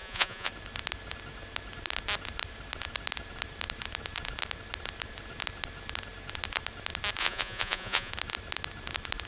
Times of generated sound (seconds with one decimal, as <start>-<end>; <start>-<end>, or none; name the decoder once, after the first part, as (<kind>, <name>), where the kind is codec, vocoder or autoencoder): 0.0-0.5 (vocoder, Vocos); 7.2-8.1